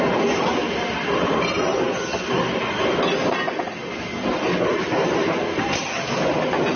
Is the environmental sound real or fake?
real